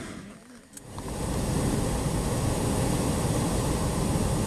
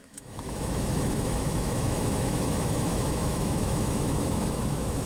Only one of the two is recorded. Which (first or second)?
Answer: first